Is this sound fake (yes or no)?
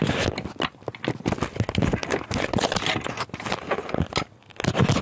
no